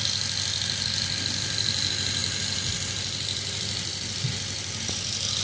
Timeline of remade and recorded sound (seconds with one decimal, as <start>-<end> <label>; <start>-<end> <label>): 0.0-5.4 recorded